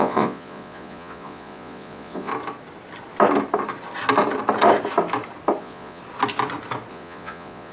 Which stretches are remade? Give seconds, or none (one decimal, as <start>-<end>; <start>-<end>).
0.0-2.3; 5.6-6.0; 6.9-7.7